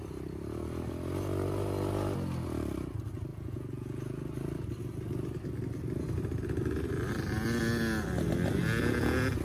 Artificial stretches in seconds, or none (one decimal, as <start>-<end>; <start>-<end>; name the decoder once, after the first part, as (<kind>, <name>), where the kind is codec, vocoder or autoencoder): 3.3-4.2 (vocoder, Vocos)